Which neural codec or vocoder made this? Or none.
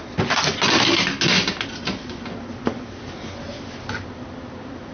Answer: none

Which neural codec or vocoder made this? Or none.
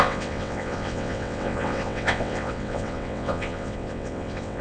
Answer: vocoder, WaveNeXt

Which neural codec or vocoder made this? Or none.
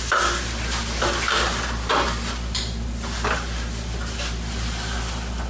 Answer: none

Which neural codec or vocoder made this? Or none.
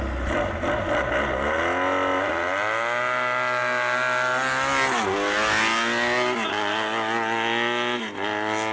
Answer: none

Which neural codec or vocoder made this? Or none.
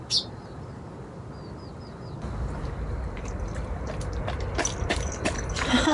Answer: none